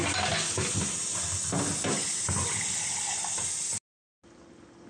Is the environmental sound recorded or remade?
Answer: recorded